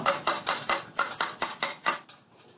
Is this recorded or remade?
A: recorded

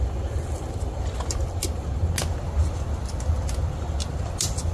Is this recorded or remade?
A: recorded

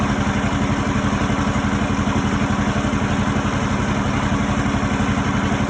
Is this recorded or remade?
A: recorded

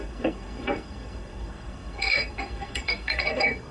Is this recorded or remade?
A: remade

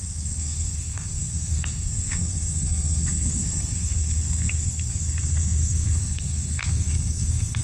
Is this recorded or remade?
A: remade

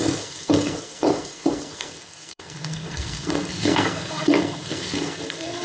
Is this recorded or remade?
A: remade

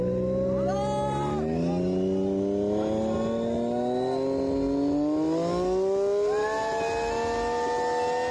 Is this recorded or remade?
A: recorded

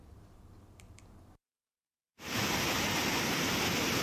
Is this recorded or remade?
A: recorded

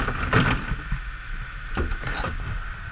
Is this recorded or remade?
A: recorded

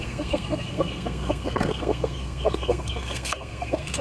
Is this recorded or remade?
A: remade